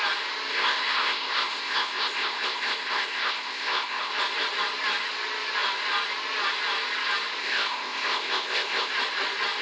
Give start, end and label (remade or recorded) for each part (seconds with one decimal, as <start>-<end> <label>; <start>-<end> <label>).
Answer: 0.0-0.5 recorded; 0.5-4.1 remade; 4.1-7.4 recorded; 7.4-8.9 remade; 8.9-9.6 recorded